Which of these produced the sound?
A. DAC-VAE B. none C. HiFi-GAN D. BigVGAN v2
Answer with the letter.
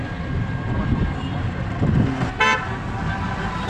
B